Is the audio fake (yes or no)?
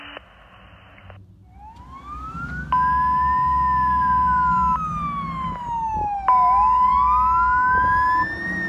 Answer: no